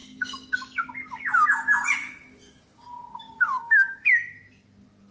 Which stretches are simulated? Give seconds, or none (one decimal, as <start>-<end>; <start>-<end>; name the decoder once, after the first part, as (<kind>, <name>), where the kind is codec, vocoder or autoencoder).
0.0-0.9 (codec, DAC); 2.0-4.1

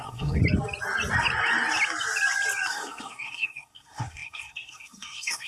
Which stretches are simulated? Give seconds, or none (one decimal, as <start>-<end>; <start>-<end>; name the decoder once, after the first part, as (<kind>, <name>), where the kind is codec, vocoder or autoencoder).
0.0-0.4 (codec, SNAC); 2.7-5.5